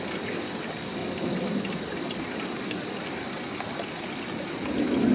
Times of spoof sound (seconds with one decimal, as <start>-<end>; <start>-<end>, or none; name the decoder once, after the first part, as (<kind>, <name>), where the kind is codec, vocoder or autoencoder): 1.0-3.9 (vocoder, BigVGAN v2)